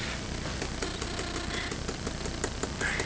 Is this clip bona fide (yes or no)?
yes